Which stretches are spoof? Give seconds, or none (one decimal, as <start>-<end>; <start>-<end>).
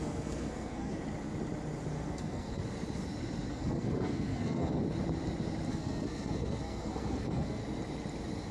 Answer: 0.0-1.0; 1.9-2.6; 3.5-4.8; 5.7-7.6